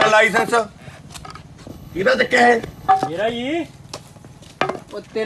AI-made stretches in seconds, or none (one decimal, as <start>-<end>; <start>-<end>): 1.7-2.9